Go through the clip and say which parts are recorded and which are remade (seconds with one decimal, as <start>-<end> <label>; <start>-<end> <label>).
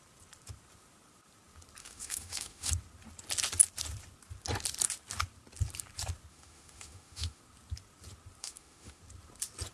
0.0-1.8 recorded; 1.8-2.7 remade; 2.7-6.3 recorded; 6.3-7.4 remade; 7.4-8.4 recorded; 8.4-9.0 remade; 9.0-9.7 recorded